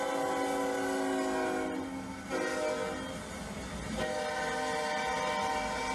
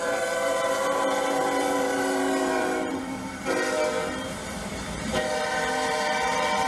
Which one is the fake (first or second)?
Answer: second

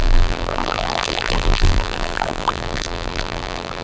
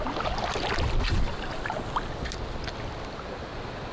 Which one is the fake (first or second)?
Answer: first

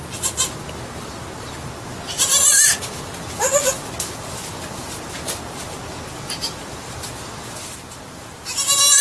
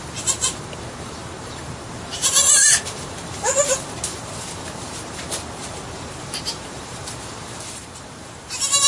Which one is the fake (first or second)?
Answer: second